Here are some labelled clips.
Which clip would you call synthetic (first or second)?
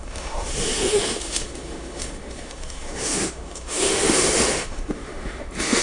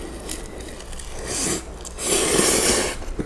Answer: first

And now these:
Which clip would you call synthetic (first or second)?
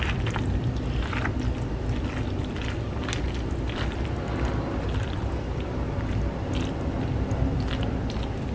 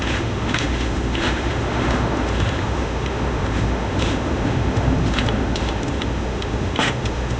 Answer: second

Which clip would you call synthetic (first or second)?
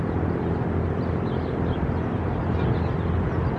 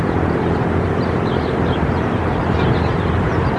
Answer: second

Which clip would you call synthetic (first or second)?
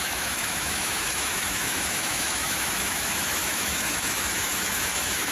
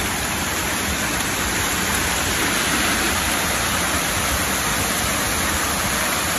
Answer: first